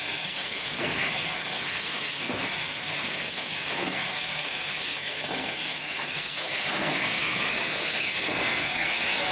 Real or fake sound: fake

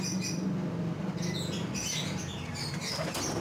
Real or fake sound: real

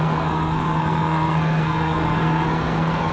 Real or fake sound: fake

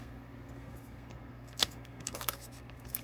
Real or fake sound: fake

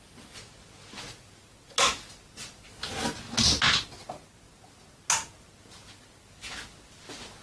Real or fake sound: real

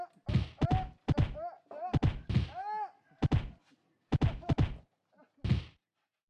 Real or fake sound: real